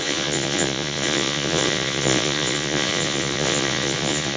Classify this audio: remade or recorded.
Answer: remade